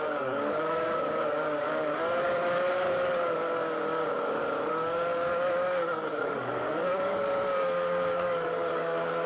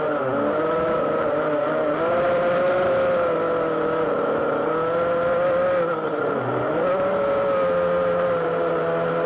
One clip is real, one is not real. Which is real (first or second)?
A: second